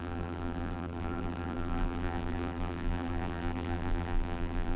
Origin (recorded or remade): remade